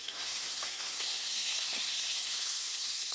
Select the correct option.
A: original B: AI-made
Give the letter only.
B